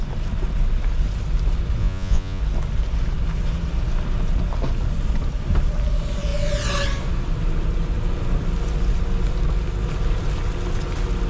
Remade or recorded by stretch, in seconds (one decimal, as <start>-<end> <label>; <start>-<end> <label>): 0.0-1.8 recorded; 1.8-2.4 remade; 2.4-11.3 recorded